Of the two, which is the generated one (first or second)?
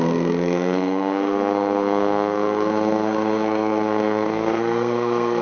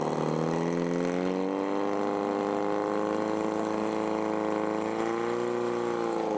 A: first